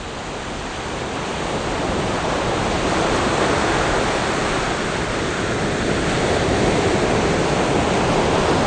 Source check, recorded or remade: recorded